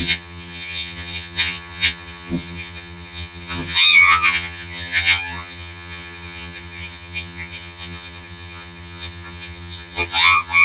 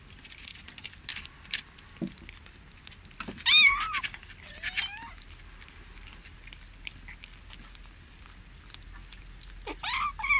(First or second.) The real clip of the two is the second